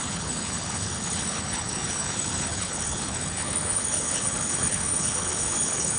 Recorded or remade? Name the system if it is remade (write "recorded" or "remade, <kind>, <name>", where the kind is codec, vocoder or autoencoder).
remade, codec, HILCodec